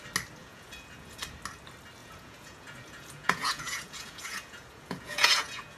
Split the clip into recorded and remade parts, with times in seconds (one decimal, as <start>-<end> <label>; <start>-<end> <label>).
0.0-0.4 recorded; 0.4-1.2 remade; 1.2-2.0 recorded; 2.0-5.8 remade